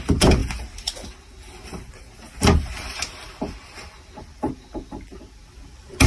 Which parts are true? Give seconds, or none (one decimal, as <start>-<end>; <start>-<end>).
0.0-6.1